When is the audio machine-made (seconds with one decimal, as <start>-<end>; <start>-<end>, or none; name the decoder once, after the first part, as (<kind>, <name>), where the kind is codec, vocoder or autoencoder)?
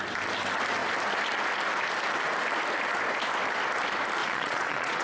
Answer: 4.2-5.0 (vocoder, Vocos)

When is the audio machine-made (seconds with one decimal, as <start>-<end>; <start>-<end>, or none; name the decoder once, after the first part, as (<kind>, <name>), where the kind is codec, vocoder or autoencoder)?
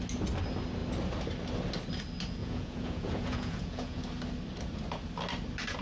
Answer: 2.4-4.0 (vocoder, Vocos)